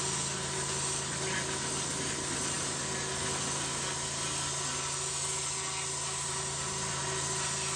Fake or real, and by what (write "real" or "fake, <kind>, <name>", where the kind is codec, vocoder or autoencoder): real